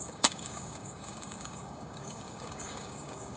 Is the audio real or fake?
fake